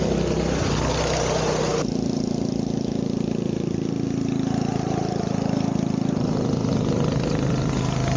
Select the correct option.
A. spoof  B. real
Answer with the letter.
B